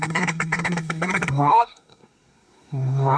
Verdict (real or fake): fake